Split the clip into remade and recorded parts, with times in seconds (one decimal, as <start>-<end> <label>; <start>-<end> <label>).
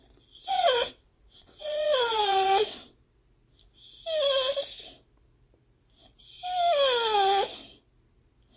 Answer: 0.0-0.4 recorded; 0.4-3.0 remade; 3.0-8.6 recorded